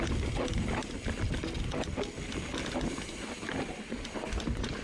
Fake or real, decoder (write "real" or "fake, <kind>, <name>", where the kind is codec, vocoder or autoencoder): real